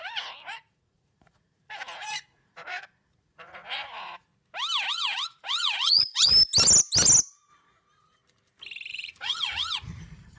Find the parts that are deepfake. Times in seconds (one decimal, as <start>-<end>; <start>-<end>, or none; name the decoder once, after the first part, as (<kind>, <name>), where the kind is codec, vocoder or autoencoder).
0.0-4.3 (vocoder, Vocos); 4.9-6.3; 7.3-8.2; 8.9-10.4